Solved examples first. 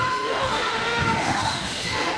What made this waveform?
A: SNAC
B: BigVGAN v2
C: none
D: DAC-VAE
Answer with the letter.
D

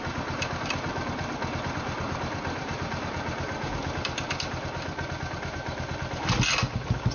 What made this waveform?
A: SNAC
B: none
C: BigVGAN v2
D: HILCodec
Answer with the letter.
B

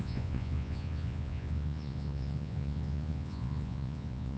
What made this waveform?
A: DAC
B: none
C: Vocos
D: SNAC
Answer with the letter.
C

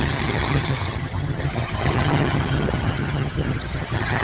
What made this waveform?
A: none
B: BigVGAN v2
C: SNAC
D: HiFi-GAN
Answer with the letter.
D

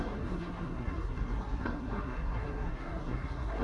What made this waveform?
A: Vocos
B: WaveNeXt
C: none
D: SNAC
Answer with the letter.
D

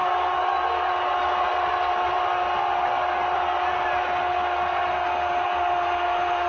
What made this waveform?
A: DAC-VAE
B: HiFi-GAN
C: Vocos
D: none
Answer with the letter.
D